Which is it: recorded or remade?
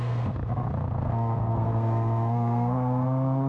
remade